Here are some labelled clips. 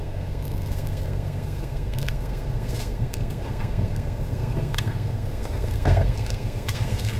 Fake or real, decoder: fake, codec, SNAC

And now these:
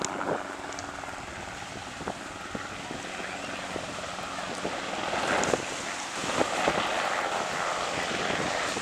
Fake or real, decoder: real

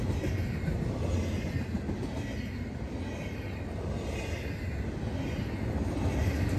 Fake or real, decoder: real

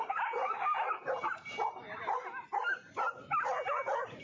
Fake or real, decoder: real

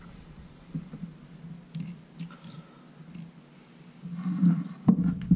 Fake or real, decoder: real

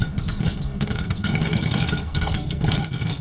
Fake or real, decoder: fake, codec, SNAC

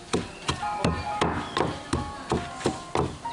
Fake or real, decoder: real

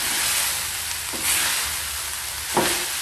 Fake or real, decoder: real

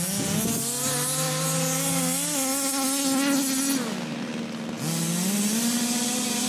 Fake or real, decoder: real